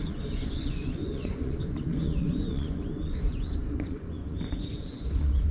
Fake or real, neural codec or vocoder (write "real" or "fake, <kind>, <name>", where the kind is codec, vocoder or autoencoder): fake, vocoder, Vocos